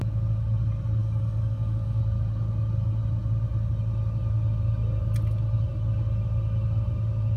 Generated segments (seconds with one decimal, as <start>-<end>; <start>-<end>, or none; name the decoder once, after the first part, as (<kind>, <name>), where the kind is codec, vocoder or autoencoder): 1.0-2.0 (codec, DAC)